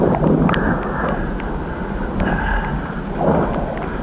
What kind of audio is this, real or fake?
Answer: real